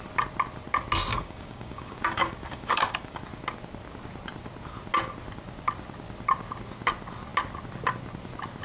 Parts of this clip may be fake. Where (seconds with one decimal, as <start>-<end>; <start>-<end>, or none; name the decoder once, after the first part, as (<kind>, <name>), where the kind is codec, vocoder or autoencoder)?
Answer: 1.1-3.2 (codec, DAC)